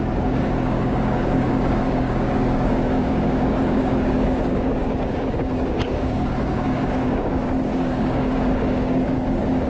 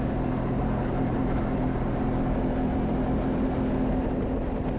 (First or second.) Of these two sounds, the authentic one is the second